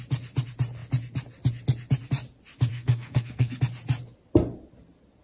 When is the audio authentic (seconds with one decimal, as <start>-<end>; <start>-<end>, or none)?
0.0-2.7; 3.6-5.2